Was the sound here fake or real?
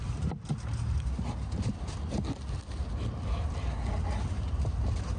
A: real